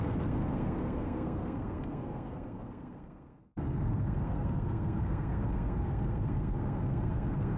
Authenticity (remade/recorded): remade